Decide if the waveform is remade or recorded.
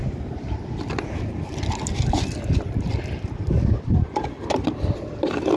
remade